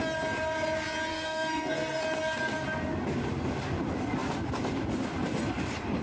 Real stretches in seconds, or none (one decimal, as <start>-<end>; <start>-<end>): 0.0-1.1; 2.0-6.0